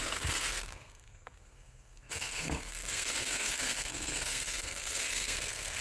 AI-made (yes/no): yes